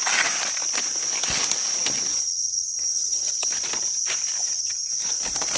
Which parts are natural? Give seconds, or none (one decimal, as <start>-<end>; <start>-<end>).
0.0-2.1; 3.5-4.4; 4.9-5.6